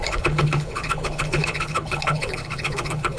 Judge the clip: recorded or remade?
remade